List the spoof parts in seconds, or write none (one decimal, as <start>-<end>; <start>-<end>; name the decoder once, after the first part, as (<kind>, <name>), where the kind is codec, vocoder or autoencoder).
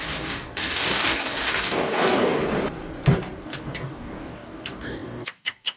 0.0-2.4 (codec, DAC); 3.4-5.8